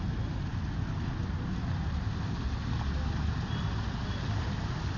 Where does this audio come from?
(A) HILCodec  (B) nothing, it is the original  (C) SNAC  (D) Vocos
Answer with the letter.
B